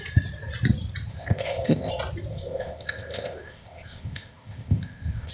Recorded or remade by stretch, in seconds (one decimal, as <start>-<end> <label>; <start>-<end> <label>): 0.0-1.1 recorded; 1.1-1.9 remade; 1.9-2.3 recorded; 2.3-5.3 remade